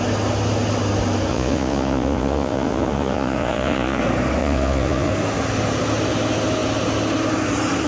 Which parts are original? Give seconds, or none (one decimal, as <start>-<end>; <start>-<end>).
0.0-1.3; 4.0-4.4; 5.1-7.9